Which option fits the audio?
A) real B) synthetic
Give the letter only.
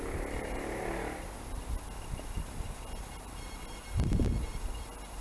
A